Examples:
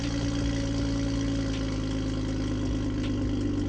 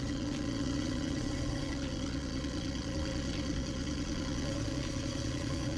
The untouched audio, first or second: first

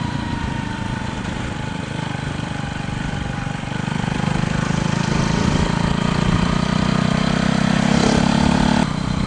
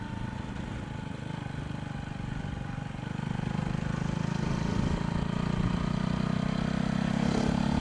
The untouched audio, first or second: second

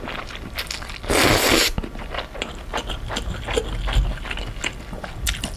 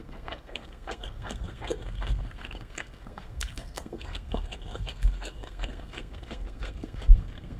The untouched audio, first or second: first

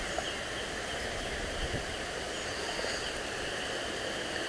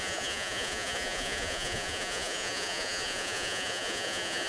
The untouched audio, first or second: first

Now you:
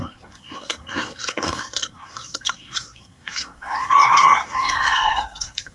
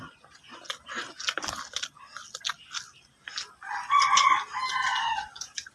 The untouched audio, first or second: second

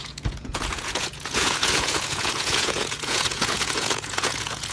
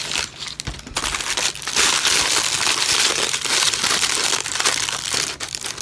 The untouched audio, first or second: second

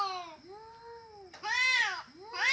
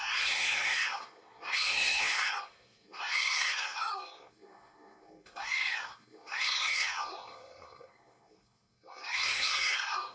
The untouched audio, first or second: first